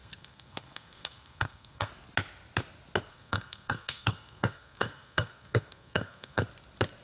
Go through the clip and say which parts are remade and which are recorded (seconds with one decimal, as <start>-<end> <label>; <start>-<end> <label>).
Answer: 0.0-1.9 remade; 1.9-3.1 recorded; 3.1-6.4 remade; 6.4-7.0 recorded